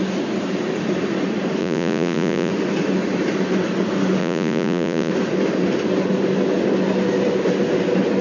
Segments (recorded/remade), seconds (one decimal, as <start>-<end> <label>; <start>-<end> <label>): 0.0-1.6 recorded; 1.6-2.5 remade; 2.5-4.2 recorded; 4.2-5.1 remade; 5.1-8.2 recorded